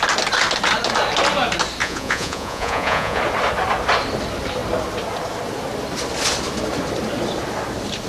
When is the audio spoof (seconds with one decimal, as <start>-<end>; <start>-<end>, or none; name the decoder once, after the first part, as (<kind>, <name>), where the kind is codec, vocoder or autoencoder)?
1.8-3.2 (vocoder, Vocos)